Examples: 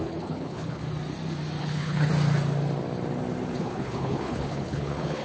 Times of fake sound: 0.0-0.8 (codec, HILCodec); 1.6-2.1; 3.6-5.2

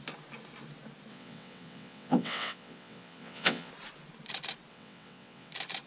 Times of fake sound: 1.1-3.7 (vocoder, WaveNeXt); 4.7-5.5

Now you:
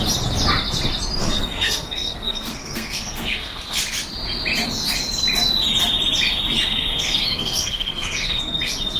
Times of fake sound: 1.2-3.8 (codec, SNAC); 6.7-8.6

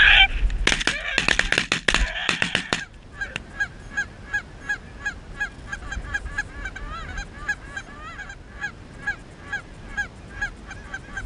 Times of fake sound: 2.2-4.5 (vocoder, BigVGAN v2); 5.7-6.4

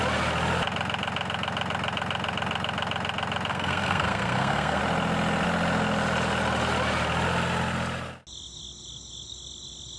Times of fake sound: 3.5-4.8 (codec, SNAC)